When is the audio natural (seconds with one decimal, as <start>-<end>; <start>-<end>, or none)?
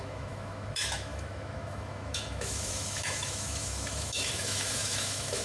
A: none